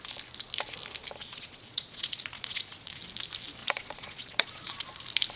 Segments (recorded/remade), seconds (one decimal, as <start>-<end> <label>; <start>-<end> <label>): 0.0-1.2 recorded; 1.2-3.0 remade; 3.0-3.6 recorded; 3.6-4.9 remade; 4.9-5.4 recorded

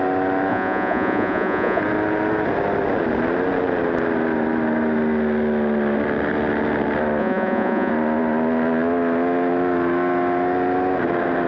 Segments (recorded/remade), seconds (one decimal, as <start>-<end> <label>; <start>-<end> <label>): 0.0-0.5 recorded; 0.5-1.8 remade; 1.8-7.2 recorded; 7.2-7.9 remade; 7.9-11.5 recorded

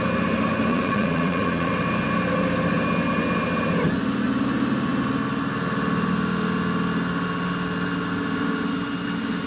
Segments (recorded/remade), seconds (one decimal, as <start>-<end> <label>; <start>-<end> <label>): 0.0-0.7 recorded; 0.7-1.7 remade; 1.7-9.5 recorded

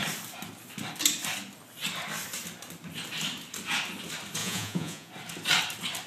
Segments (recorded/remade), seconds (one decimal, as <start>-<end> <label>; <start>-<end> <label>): 0.0-4.4 recorded; 4.4-5.1 remade; 5.1-6.1 recorded

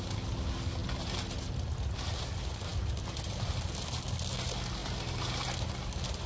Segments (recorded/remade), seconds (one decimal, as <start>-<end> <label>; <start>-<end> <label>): 0.0-6.3 recorded

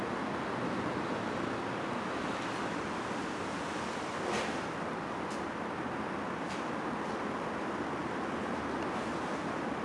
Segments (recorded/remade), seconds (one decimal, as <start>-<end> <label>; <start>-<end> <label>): 0.0-9.8 recorded

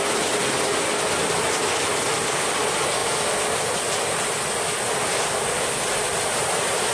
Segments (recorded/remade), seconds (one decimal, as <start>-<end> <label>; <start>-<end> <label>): 0.0-6.9 recorded

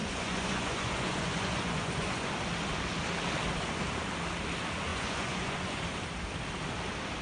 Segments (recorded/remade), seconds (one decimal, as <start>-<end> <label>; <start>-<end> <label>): 0.0-2.3 remade; 2.3-4.9 recorded; 4.9-5.8 remade; 5.8-7.2 recorded